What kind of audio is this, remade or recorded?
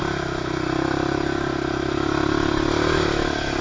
recorded